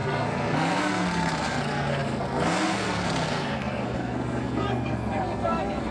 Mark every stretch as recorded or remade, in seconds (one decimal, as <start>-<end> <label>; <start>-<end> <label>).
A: 0.0-5.9 remade